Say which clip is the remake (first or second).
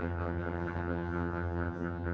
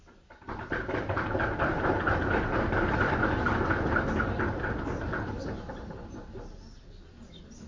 first